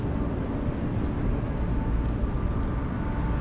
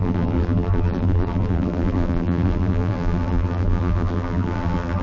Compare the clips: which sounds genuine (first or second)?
first